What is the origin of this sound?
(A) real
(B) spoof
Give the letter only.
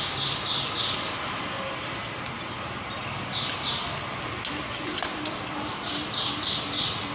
A